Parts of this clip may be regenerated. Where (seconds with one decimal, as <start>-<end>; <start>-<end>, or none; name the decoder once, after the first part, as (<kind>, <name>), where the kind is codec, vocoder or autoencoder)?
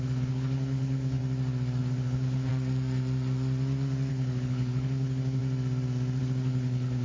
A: 0.0-1.2 (codec, HILCodec); 1.8-2.5; 4.1-5.4; 6.2-7.0